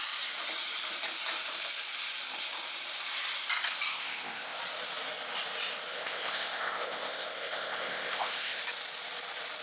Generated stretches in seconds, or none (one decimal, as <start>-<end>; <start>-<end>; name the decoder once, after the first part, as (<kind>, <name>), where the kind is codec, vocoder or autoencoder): 3.9-4.6 (codec, ZipCodec); 5.9-8.6